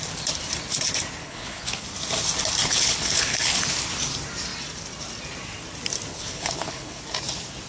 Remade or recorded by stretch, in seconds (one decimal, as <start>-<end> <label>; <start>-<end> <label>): 0.0-1.2 recorded; 1.2-1.8 remade; 1.8-2.6 recorded; 2.6-3.7 remade; 3.7-6.1 recorded; 6.1-7.0 remade; 7.0-7.7 recorded